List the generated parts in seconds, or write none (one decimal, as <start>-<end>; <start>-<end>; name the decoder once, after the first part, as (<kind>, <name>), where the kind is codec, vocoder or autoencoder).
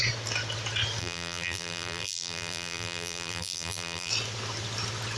1.0-4.1 (vocoder, BigVGAN v2)